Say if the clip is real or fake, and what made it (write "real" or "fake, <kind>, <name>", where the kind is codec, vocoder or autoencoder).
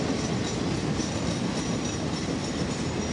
real